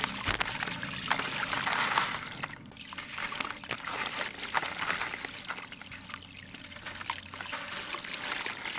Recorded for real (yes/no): yes